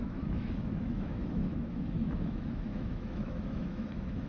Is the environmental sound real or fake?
fake